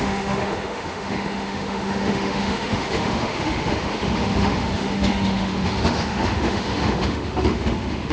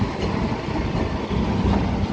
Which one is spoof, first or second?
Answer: first